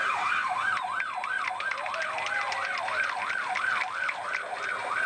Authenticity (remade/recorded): recorded